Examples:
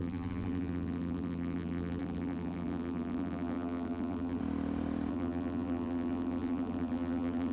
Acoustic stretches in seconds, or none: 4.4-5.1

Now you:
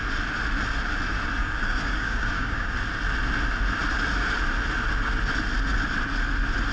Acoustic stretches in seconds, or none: 0.0-1.4; 2.8-6.7

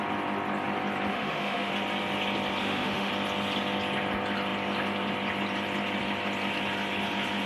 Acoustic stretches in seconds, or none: 0.0-1.1; 1.7-2.6; 3.1-7.5

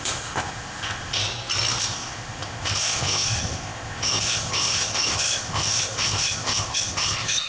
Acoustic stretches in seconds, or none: 1.2-1.8

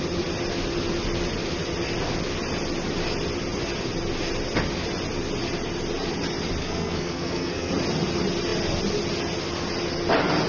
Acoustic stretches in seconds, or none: 0.0-6.6; 7.7-10.5